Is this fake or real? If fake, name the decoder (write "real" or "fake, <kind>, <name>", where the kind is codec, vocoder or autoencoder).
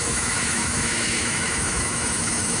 fake, autoencoder, DAC-VAE